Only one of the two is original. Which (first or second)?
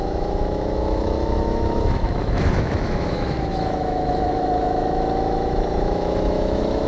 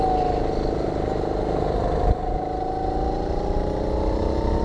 second